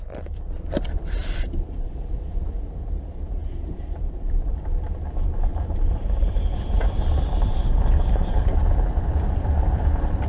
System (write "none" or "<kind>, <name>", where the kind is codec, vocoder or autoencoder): vocoder, BigVGAN v2